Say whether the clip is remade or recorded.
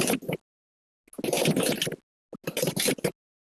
recorded